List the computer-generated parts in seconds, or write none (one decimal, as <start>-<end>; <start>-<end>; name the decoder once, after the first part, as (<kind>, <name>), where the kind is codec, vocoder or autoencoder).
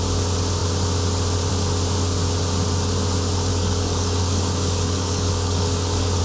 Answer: 3.5-6.2 (codec, DAC)